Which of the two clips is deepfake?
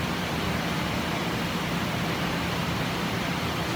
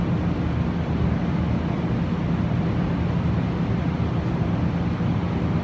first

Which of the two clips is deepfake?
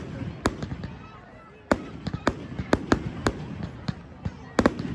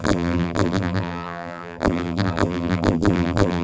second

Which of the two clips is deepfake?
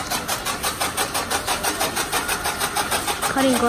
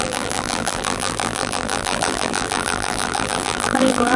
second